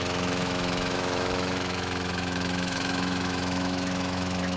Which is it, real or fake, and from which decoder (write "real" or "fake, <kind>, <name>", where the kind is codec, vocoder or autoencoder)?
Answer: fake, autoencoder, DAC-VAE